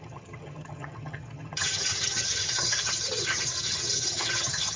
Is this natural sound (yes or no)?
no